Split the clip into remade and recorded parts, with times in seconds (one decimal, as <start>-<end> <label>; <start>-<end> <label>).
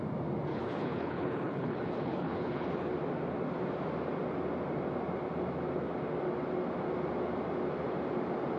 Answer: 0.0-0.5 recorded; 0.5-2.9 remade; 2.9-8.6 recorded